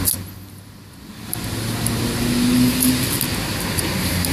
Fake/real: real